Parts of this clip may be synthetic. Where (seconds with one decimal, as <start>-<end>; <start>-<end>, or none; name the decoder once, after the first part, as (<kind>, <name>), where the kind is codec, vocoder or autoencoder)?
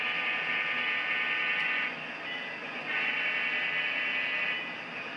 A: 1.6-2.1 (vocoder, Vocos); 2.6-3.3